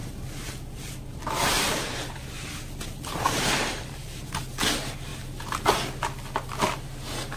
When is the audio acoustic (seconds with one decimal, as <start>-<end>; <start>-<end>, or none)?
4.3-5.1; 5.8-7.4